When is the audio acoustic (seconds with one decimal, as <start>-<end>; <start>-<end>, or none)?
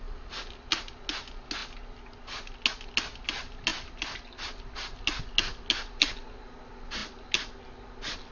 0.0-8.3